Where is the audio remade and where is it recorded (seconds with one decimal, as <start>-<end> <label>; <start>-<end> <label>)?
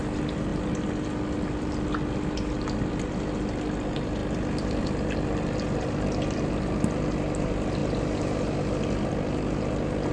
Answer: 0.0-10.1 recorded